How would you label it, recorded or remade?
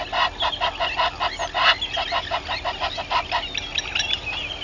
recorded